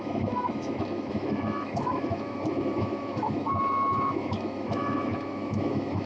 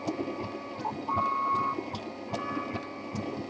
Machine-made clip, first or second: first